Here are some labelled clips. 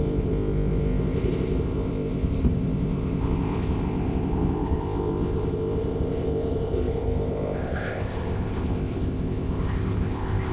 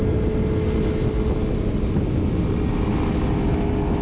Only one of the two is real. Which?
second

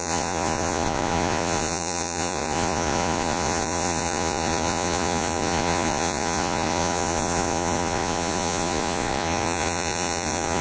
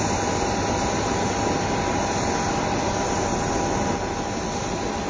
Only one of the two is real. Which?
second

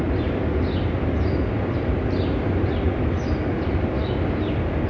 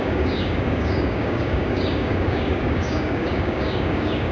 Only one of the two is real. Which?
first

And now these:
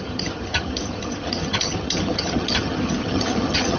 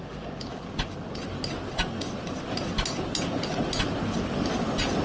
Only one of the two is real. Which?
second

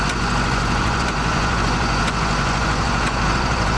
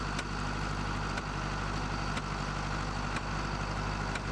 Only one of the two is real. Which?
second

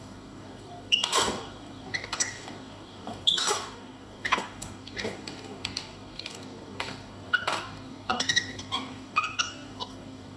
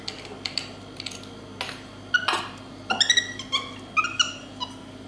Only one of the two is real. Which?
second